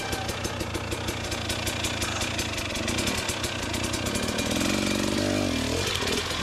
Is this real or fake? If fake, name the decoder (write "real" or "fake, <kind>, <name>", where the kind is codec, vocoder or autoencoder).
real